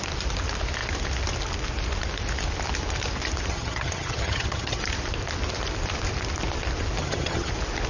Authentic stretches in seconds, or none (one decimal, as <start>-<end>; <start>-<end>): 0.0-3.5; 4.8-7.0; 7.5-7.9